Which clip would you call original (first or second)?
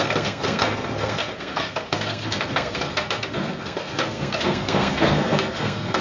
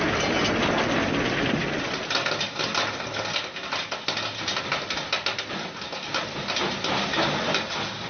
second